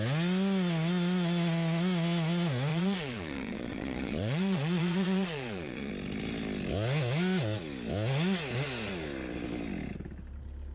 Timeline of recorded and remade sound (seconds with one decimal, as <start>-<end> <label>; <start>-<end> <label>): 0.0-2.7 recorded; 2.7-5.9 remade; 5.9-10.7 recorded